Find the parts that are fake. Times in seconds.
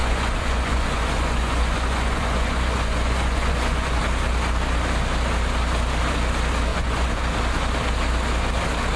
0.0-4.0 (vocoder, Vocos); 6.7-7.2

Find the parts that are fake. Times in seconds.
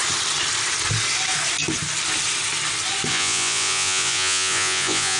3.1-5.2 (vocoder, Vocos)